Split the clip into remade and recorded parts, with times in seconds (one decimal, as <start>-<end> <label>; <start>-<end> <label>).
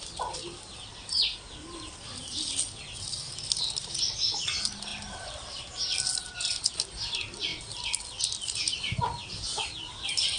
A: 0.0-4.9 recorded; 4.9-5.6 remade; 5.6-7.5 recorded; 7.5-8.2 remade; 8.2-9.2 recorded; 9.2-9.8 remade; 9.8-10.4 recorded